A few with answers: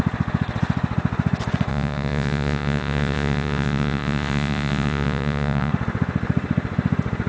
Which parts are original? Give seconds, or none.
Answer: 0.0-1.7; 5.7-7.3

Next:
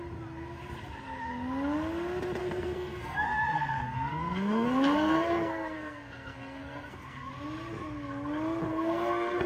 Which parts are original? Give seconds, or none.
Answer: 0.0-2.4; 7.3-8.7